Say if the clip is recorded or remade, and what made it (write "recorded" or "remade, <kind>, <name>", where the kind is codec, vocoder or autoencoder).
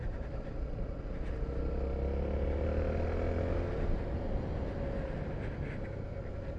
recorded